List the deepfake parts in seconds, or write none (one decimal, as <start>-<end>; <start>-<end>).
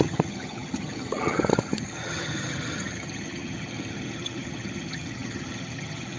0.0-6.2